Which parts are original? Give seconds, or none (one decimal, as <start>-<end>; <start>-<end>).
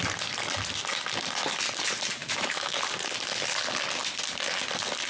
0.0-2.2; 2.8-5.1